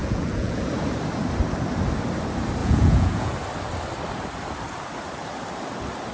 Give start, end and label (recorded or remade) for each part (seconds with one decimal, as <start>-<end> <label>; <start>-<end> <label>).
0.0-0.6 remade; 0.6-2.6 recorded; 2.6-3.3 remade; 3.3-6.1 recorded